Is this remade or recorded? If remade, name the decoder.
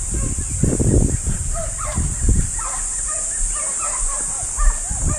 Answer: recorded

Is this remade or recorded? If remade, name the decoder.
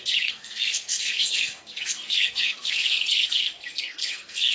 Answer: remade, codec, SNAC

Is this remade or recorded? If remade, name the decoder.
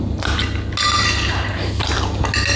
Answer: recorded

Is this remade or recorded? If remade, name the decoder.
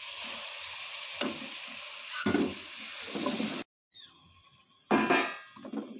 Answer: recorded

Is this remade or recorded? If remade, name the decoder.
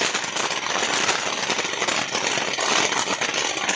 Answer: recorded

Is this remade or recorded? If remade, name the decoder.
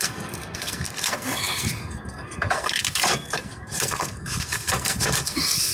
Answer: remade, codec, SNAC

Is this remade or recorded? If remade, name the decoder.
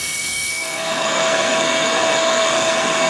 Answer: remade, codec, SNAC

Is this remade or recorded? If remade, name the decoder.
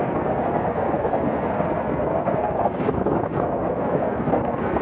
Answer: remade, codec, SNAC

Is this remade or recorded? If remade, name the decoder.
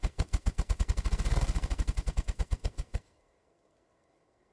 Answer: remade, codec, SNAC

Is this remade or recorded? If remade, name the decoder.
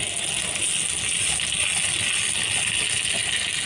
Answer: recorded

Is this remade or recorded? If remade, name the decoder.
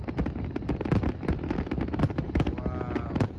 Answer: recorded